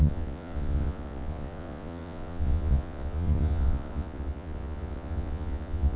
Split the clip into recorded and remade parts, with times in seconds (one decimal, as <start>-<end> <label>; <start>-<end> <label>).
0.0-6.0 remade